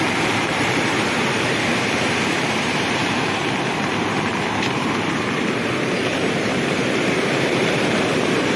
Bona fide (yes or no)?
no